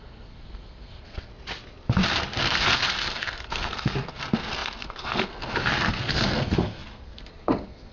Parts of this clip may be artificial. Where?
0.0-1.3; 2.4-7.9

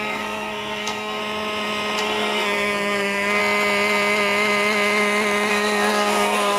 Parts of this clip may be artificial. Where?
0.0-1.2; 2.0-3.4; 5.5-6.6